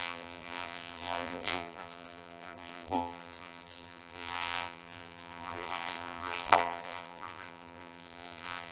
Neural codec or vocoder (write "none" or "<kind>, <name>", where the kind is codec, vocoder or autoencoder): vocoder, BigVGAN v2